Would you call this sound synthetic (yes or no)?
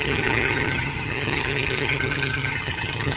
yes